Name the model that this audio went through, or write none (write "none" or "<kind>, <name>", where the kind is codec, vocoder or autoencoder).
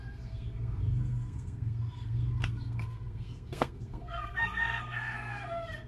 codec, SNAC